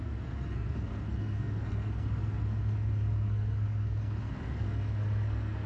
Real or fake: fake